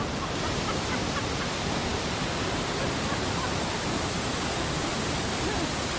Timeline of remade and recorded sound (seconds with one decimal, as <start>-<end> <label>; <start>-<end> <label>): 0.0-6.0 recorded